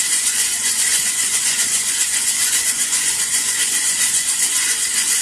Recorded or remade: remade